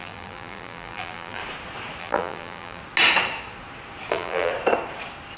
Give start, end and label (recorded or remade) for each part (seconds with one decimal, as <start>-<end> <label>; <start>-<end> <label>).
0.0-1.4 remade; 1.4-2.0 recorded; 2.0-2.8 remade; 2.8-4.1 recorded; 4.1-4.5 remade; 4.5-5.4 recorded